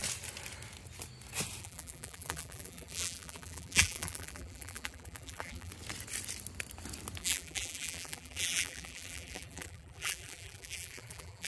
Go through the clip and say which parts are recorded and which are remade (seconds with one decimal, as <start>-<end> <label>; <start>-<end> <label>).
0.0-1.6 recorded; 1.6-5.7 remade; 5.7-7.2 recorded; 7.2-11.5 remade